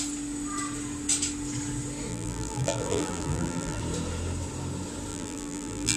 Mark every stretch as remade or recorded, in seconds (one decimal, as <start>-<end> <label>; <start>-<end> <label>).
0.0-2.1 recorded; 2.1-3.8 remade; 3.8-5.1 recorded; 5.1-6.0 remade